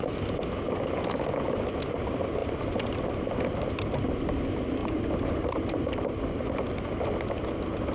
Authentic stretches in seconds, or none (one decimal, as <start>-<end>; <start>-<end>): 0.0-4.8; 6.0-7.9